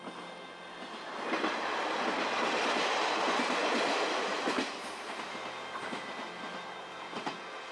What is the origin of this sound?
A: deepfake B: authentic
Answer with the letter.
B